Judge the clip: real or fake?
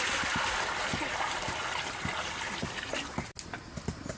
real